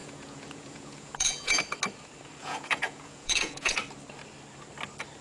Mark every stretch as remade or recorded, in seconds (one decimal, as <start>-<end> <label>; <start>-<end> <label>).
0.0-1.6 remade; 1.6-2.4 recorded; 2.4-3.8 remade; 3.8-5.2 recorded

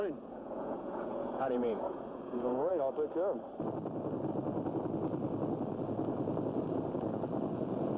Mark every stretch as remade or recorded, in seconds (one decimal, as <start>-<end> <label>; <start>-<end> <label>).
0.0-2.7 remade; 2.7-7.5 recorded; 7.5-8.0 remade

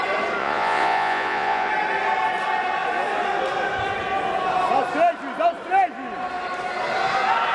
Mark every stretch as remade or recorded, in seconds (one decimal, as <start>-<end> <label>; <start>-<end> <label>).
0.0-0.4 recorded; 0.4-1.7 remade; 1.7-7.5 recorded

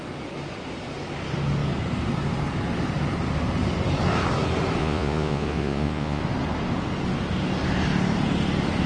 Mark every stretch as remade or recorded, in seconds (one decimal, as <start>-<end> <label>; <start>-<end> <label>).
0.0-4.8 recorded; 4.8-6.2 remade; 6.2-8.9 recorded

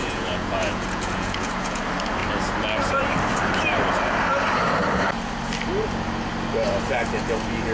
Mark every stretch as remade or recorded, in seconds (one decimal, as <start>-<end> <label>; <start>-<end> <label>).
0.0-1.8 remade; 1.8-7.7 recorded